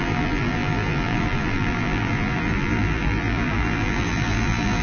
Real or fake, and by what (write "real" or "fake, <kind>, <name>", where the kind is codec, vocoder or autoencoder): fake, vocoder, BigVGAN v2